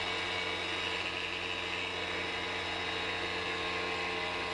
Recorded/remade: recorded